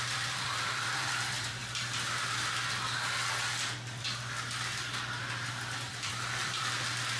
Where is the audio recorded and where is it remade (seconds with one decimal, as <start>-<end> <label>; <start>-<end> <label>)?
0.0-1.6 remade; 1.6-5.9 recorded; 5.9-7.2 remade